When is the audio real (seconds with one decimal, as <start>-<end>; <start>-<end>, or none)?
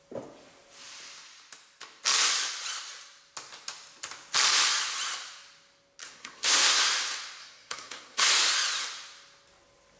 0.0-6.0; 6.8-7.4; 8.3-10.0